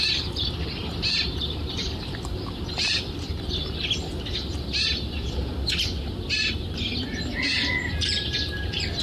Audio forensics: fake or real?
fake